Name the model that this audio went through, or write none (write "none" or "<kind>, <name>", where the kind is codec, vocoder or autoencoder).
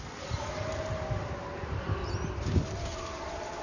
none